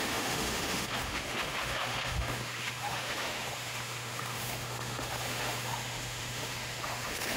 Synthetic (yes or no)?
yes